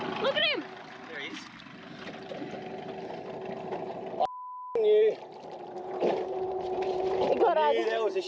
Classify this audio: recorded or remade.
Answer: recorded